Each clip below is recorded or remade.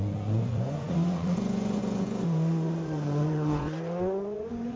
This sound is remade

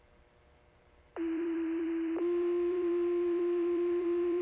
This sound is remade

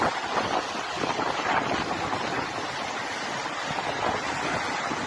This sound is recorded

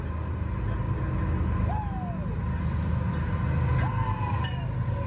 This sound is recorded